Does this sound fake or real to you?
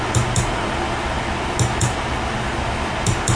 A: real